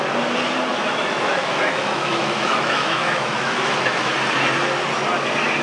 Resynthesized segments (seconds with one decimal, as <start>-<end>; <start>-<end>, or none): 0.7-4.1